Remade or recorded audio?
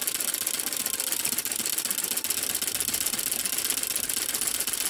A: recorded